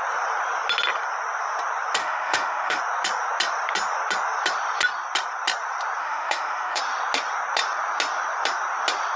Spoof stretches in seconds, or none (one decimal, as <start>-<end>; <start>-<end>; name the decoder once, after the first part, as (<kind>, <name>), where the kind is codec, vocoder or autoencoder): 2.0-2.8 (autoencoder, DAC-VAE); 6.0-6.8